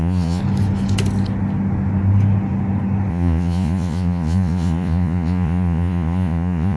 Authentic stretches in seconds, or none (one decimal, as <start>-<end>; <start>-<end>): 0.4-3.1